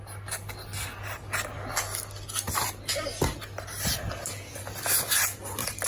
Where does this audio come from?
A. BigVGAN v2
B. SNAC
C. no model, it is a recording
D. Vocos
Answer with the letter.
C